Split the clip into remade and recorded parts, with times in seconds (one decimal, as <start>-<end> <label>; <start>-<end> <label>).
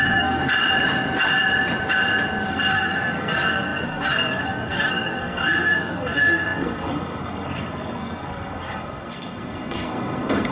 0.0-0.4 remade; 0.4-2.5 recorded; 2.5-10.5 remade